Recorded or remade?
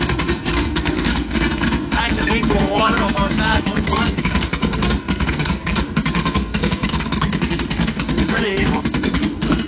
remade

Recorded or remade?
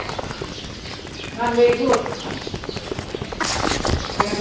recorded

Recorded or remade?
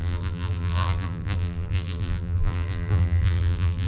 remade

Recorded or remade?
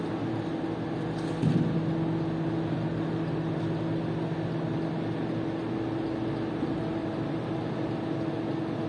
recorded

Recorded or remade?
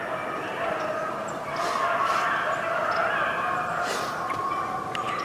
recorded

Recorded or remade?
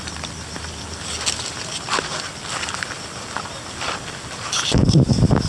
recorded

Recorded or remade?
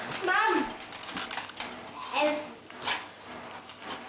recorded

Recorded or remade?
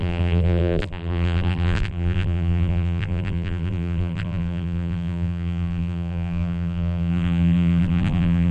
remade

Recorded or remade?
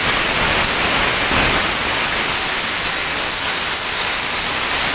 recorded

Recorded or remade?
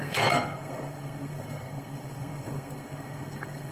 remade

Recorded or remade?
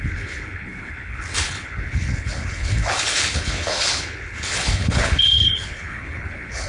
remade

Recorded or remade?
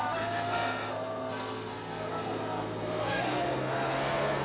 remade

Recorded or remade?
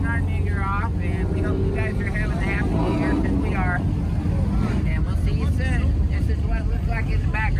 recorded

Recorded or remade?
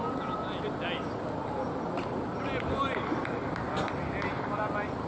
recorded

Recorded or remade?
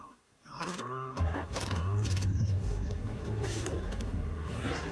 remade